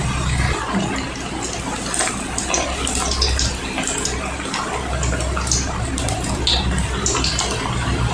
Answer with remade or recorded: recorded